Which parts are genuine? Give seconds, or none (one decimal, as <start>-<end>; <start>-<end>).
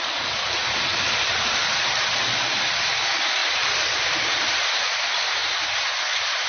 0.0-0.9; 1.6-3.4; 4.5-6.5